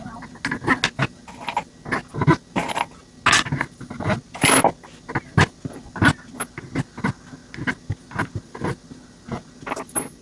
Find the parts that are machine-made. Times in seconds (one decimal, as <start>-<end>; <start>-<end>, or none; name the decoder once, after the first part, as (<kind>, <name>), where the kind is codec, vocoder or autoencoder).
none